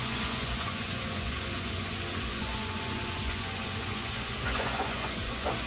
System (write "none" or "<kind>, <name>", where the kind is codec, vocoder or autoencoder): vocoder, Vocos